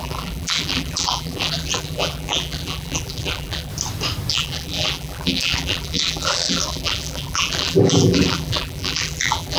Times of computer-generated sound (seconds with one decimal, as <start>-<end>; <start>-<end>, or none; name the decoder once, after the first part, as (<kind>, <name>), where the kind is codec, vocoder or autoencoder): 0.0-3.7 (vocoder, BigVGAN v2); 4.3-9.6